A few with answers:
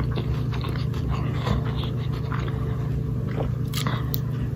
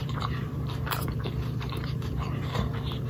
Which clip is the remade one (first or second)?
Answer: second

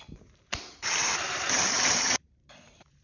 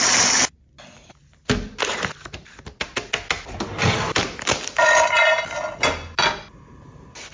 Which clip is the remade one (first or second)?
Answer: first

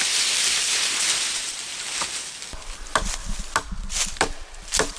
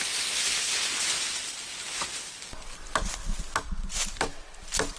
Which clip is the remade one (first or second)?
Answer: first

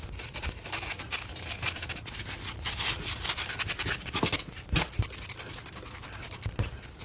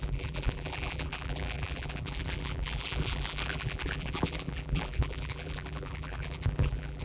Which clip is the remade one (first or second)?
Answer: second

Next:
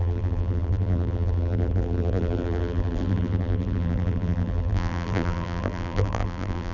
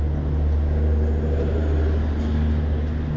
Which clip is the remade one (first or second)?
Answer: first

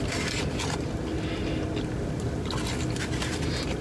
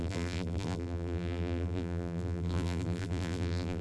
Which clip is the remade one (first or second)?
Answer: second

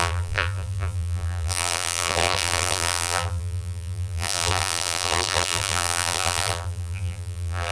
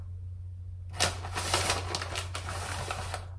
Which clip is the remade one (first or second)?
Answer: first